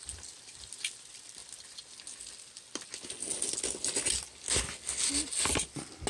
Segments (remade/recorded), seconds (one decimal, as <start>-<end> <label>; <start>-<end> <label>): 0.0-6.1 recorded